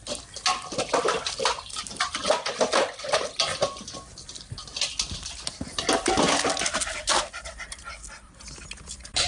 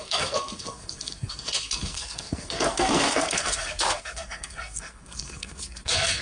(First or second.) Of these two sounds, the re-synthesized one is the second